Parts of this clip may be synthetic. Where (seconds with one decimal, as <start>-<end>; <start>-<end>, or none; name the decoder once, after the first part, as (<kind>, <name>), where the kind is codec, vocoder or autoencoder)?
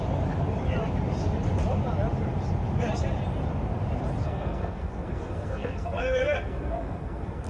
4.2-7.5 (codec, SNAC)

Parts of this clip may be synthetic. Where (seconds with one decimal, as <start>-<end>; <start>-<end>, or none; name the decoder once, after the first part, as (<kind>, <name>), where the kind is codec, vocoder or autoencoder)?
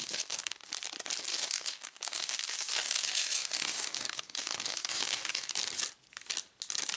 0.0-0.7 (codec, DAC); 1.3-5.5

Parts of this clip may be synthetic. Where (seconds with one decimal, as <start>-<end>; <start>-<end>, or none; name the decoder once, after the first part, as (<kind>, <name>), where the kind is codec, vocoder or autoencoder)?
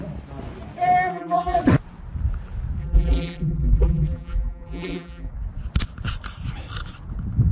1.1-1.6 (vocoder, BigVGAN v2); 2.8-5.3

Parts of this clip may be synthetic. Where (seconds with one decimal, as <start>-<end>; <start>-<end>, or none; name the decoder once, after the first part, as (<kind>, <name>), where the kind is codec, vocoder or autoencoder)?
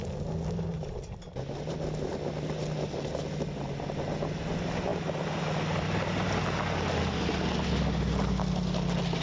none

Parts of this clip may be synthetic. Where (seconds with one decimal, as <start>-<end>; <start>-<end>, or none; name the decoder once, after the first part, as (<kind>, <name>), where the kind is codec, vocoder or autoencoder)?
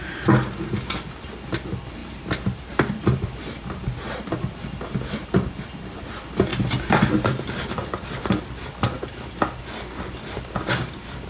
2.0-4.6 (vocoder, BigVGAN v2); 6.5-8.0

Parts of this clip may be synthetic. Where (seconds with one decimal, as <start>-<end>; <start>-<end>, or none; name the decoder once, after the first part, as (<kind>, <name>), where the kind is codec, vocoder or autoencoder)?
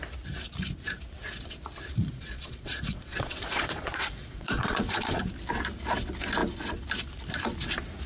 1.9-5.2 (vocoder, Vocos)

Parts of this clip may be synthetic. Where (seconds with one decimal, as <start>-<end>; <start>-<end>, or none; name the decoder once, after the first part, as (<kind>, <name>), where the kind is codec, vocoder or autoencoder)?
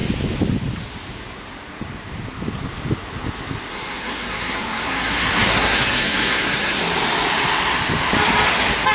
3.7-6.8 (codec, SNAC)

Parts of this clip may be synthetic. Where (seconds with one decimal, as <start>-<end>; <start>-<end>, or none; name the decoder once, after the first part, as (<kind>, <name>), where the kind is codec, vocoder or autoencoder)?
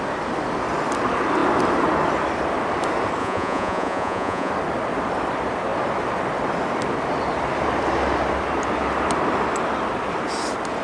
3.2-4.5 (vocoder, Vocos)